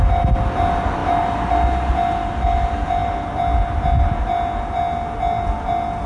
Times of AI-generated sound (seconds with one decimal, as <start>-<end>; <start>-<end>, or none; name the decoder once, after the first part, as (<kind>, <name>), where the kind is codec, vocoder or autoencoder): none